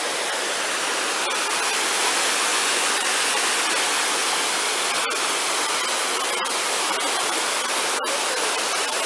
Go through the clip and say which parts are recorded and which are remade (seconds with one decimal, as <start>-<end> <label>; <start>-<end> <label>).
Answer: 0.0-2.5 recorded; 2.5-3.5 remade; 3.5-9.1 recorded